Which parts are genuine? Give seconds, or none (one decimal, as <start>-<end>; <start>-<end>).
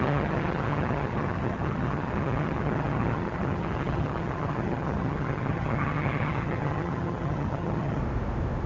8.0-8.7